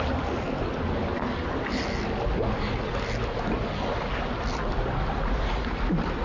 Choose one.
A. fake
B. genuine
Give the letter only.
B